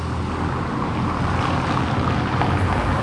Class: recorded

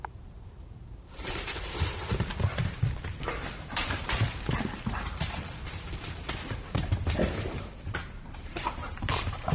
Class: remade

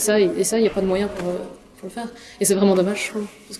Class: recorded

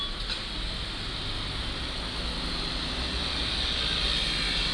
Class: recorded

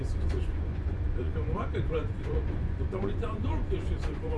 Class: remade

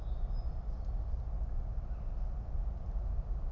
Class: recorded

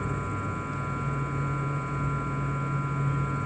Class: recorded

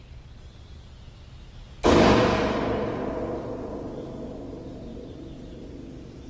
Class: recorded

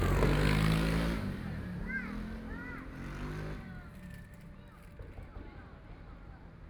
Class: recorded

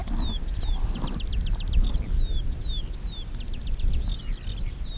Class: recorded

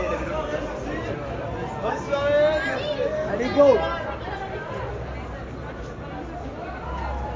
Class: recorded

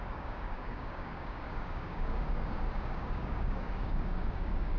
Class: remade